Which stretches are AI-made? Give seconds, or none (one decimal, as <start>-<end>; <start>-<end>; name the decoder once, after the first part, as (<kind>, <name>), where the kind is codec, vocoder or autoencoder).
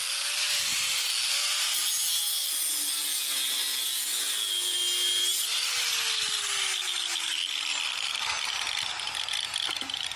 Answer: none